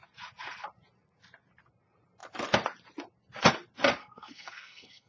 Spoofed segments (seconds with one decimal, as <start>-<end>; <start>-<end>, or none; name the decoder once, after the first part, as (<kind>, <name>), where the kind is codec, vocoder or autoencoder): 4.0-5.1 (codec, SNAC)